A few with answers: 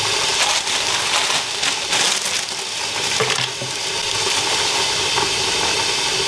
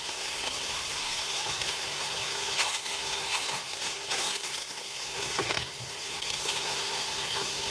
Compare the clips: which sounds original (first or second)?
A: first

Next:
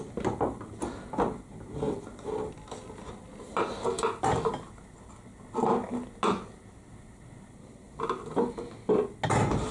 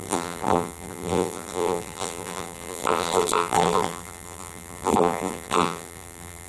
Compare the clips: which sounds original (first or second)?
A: first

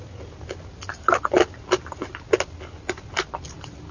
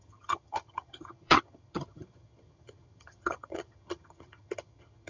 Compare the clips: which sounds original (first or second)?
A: first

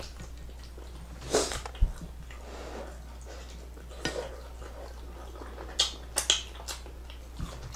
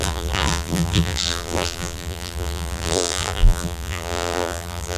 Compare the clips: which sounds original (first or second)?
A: first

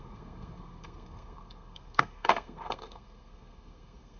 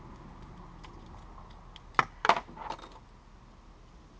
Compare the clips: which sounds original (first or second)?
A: second